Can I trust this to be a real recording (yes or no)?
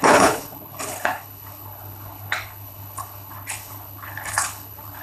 no